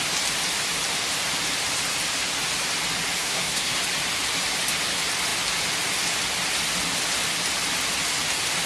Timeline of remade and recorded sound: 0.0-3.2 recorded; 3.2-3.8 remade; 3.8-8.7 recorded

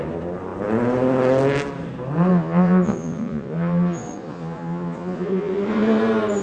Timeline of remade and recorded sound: 0.0-2.3 recorded; 2.3-6.0 remade; 6.0-6.4 recorded

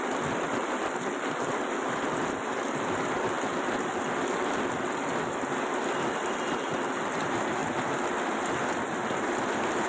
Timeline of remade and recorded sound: 0.0-5.3 remade; 5.3-5.9 recorded; 5.9-7.6 remade; 7.6-8.3 recorded; 8.3-9.9 remade

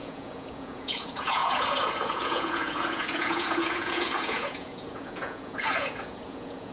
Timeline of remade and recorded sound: 0.0-6.7 remade

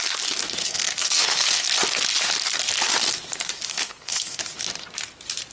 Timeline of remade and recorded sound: 0.0-0.6 recorded; 0.6-1.6 remade; 1.6-3.7 recorded; 3.7-4.4 remade; 4.4-5.5 recorded

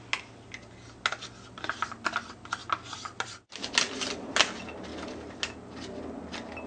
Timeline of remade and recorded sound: 0.0-6.7 recorded

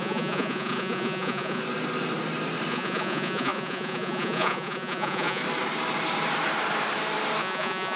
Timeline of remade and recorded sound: 0.0-1.6 remade; 1.6-2.7 recorded; 2.7-5.4 remade; 5.4-7.4 recorded; 7.4-8.0 remade